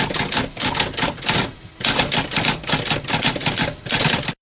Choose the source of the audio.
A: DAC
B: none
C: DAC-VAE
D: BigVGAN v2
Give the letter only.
B